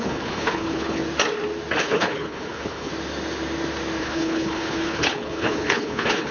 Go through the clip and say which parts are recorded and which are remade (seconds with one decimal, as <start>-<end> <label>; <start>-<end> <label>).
0.0-1.0 remade; 1.0-1.8 recorded; 1.8-2.9 remade; 2.9-4.0 recorded; 4.0-6.3 remade